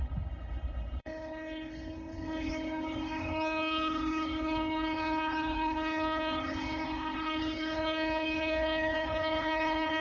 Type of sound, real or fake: fake